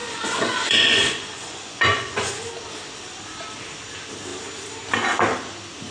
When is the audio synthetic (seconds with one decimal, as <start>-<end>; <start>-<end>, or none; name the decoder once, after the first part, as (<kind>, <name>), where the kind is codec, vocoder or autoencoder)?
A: 0.0-2.5 (vocoder, Vocos)